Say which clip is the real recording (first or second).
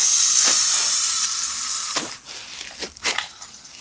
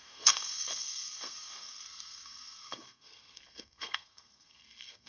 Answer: first